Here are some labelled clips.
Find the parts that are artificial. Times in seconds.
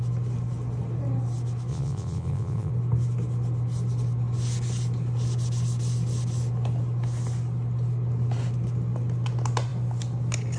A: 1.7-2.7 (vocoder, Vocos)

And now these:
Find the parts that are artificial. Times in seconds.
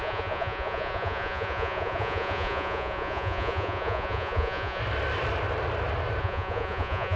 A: 0.0-4.8 (vocoder, Vocos); 6.2-7.2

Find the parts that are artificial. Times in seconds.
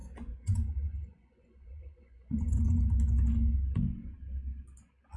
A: 0.0-2.8 (vocoder, Vocos)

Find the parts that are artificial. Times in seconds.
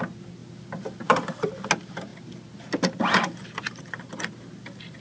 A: none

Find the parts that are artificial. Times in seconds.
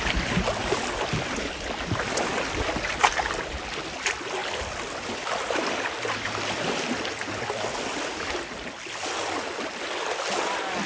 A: none